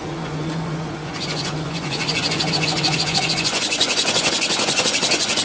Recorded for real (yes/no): no